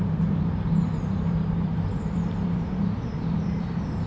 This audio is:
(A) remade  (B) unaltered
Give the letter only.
A